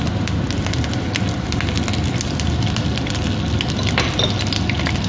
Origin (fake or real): real